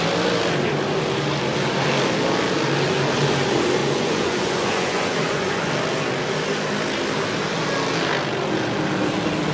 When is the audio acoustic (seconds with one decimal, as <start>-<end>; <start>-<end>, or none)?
0.0-3.8; 5.7-9.5